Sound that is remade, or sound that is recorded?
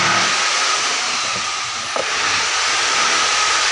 recorded